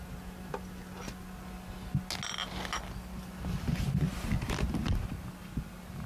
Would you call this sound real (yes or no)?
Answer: yes